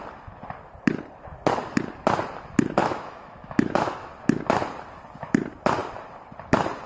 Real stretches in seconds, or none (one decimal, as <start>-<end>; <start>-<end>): 0.0-2.8; 4.1-6.9